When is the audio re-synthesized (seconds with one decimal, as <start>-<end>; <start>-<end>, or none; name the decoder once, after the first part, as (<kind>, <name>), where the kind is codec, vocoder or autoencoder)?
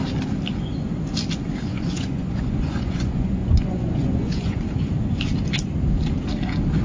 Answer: 1.7-4.6 (vocoder, Vocos)